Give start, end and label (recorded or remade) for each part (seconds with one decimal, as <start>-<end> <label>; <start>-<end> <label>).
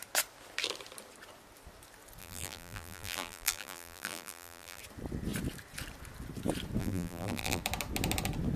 0.0-2.2 recorded; 2.2-4.8 remade; 4.8-6.8 recorded; 6.8-7.6 remade; 7.6-8.6 recorded